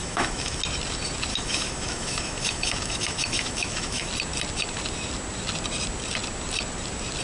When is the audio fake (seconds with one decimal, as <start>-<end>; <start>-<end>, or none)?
0.0-0.6; 1.3-4.1